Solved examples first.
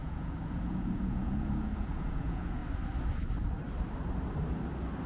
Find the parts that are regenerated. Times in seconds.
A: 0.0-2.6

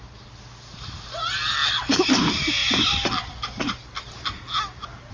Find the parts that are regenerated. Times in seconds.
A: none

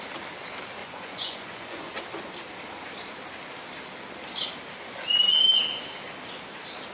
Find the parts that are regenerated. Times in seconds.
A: 0.8-2.0

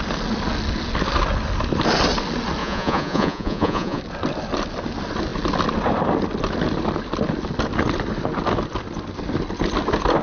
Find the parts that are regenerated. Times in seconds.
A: 2.6-4.0

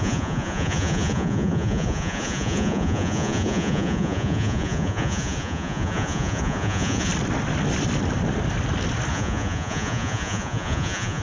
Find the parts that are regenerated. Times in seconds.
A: 0.0-7.1; 9.1-11.2

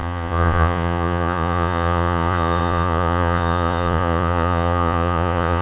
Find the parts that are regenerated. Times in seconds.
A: 0.0-5.6